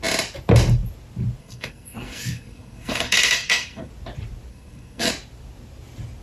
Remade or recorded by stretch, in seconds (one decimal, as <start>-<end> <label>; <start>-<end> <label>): 0.0-1.4 recorded; 1.4-3.9 remade; 3.9-4.5 recorded; 4.5-5.1 remade; 5.1-6.2 recorded